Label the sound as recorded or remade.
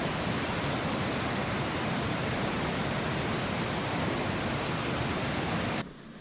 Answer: recorded